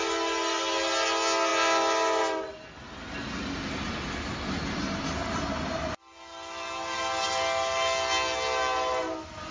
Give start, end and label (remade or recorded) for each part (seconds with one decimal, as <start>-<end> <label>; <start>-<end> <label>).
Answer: 0.0-9.5 recorded